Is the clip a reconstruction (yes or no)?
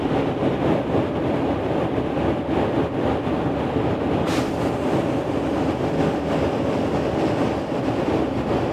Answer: no